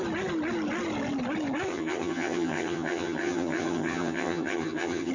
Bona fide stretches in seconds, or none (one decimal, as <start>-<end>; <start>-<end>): 0.0-1.7